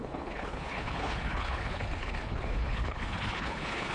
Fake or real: fake